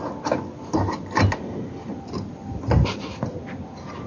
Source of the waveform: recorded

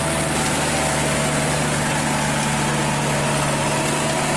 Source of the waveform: recorded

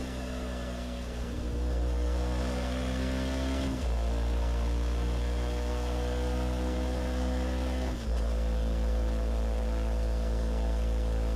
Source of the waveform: remade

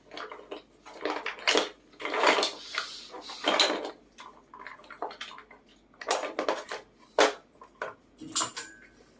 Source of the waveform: recorded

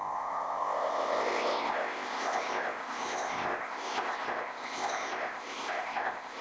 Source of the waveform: remade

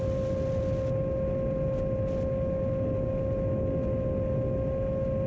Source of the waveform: recorded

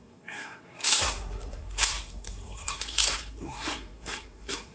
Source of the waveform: remade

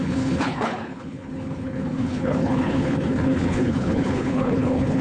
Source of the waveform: remade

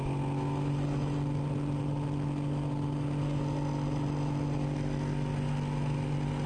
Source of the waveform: recorded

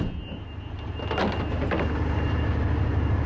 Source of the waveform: recorded